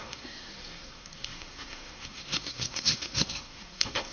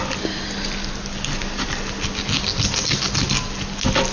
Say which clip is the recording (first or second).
second